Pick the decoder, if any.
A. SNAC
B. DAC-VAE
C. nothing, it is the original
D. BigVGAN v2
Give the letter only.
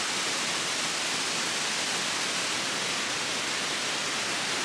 C